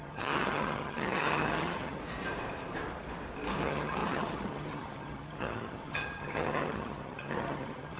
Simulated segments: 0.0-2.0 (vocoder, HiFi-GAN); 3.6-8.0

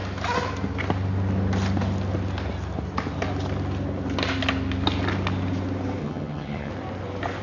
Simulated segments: 6.0-6.7 (vocoder, HiFi-GAN)

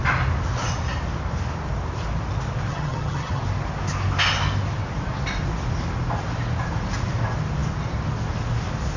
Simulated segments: 2.7-3.4 (vocoder, HiFi-GAN)

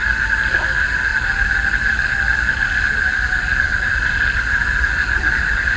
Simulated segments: none

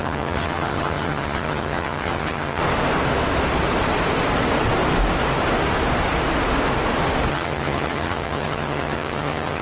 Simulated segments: 0.0-2.6 (vocoder, HiFi-GAN); 7.3-9.6

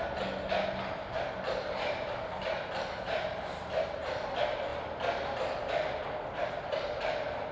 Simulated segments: none

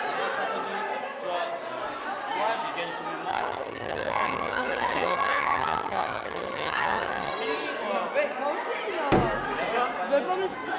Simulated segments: 3.3-7.3 (vocoder, HiFi-GAN)

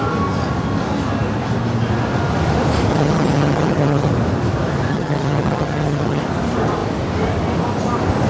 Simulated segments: 2.9-4.1 (vocoder, HiFi-GAN); 4.9-6.2